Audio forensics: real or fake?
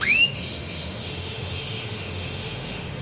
fake